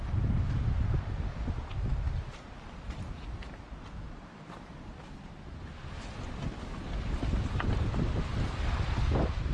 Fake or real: real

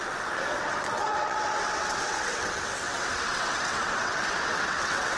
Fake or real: fake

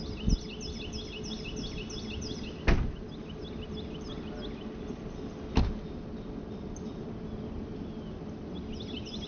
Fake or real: real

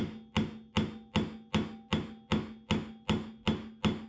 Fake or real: real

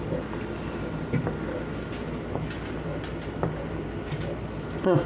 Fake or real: real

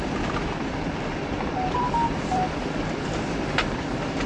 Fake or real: fake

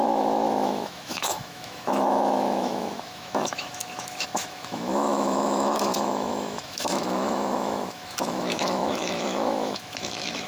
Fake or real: fake